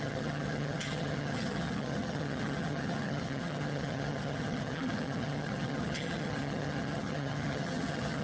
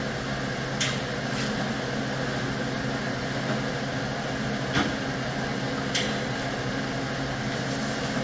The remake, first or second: first